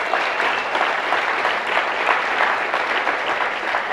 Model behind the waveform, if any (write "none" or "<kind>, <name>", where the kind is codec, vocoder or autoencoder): none